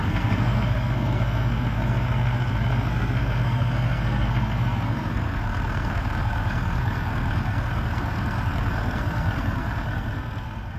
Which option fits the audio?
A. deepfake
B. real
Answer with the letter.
A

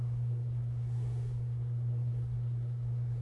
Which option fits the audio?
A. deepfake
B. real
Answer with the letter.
A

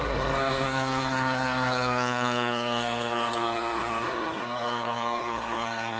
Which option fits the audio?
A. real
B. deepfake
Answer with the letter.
B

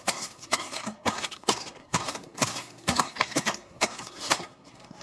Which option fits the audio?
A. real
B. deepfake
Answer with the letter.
B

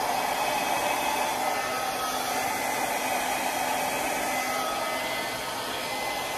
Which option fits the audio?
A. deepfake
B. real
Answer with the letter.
B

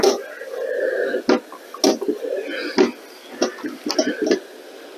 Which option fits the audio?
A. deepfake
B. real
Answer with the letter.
B